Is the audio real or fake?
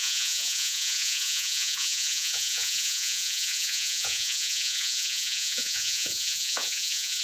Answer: fake